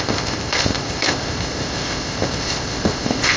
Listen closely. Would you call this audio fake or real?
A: fake